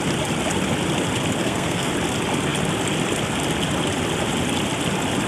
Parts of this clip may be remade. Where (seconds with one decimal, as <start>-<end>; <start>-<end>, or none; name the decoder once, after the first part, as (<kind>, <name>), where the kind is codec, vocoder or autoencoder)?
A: 1.4-1.9 (codec, SNAC)